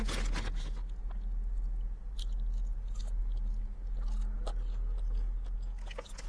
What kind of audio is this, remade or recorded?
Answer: recorded